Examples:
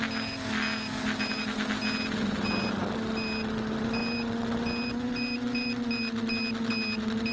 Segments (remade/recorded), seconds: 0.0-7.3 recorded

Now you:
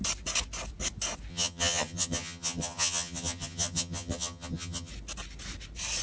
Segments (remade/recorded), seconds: 0.0-1.3 recorded; 1.3-4.9 remade; 4.9-6.0 recorded

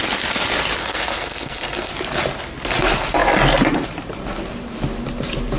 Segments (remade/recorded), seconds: 0.0-0.8 recorded; 0.8-1.9 remade; 1.9-5.6 recorded

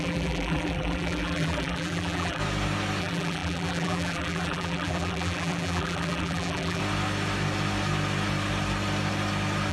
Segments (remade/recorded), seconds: 0.0-2.4 remade; 2.4-3.0 recorded; 3.0-6.8 remade; 6.8-9.7 recorded

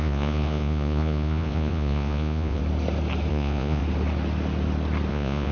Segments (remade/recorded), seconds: 0.0-2.6 remade; 2.6-3.3 recorded; 3.3-3.8 remade; 3.8-5.1 recorded; 5.1-5.5 remade